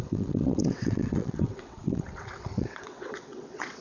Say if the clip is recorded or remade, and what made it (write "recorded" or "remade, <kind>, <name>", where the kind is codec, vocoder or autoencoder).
remade, vocoder, WaveNeXt